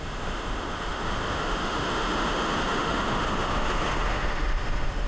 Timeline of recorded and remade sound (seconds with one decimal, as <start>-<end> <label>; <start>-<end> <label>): 0.0-5.1 remade